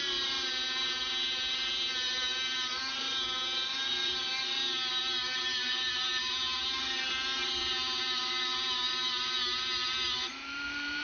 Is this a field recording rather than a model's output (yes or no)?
no